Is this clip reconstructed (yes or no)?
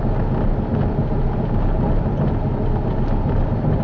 no